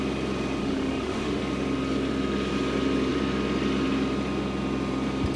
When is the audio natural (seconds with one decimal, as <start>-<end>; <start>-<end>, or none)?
0.0-0.6; 1.4-5.4